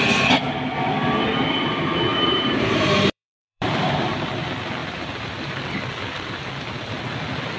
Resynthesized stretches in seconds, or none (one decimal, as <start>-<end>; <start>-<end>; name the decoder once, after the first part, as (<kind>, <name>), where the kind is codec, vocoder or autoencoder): 2.1-4.2 (vocoder, BigVGAN v2); 4.8-5.5